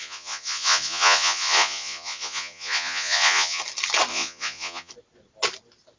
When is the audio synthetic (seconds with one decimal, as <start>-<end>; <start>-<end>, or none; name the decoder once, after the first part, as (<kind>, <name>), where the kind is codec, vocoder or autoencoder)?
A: 0.0-3.6 (vocoder, Vocos); 4.1-4.9